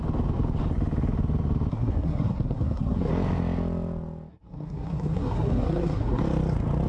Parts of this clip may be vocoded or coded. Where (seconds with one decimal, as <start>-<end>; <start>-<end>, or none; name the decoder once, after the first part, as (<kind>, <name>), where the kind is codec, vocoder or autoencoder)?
1.7-3.1 (codec, SNAC); 4.3-6.2